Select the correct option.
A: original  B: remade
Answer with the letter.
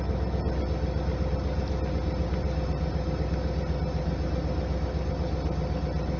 A